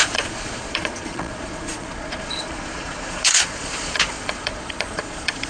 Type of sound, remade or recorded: remade